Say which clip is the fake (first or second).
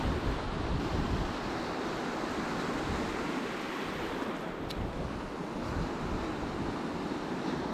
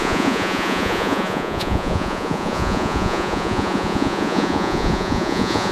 second